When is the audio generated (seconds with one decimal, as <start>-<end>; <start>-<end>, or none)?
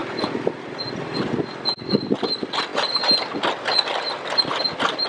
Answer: 0.0-1.0